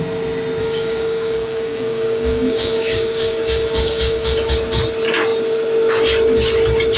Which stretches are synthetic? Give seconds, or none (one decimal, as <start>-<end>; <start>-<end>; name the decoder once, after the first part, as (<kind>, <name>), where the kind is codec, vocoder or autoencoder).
0.6-4.5 (codec, DAC)